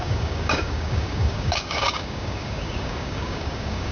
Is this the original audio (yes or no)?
no